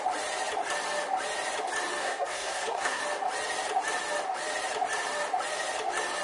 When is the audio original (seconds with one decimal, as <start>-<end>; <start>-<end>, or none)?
0.0-2.0; 3.0-6.2